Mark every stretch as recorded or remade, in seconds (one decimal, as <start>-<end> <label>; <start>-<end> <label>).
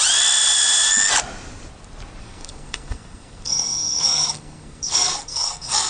0.0-2.2 recorded; 2.2-5.9 remade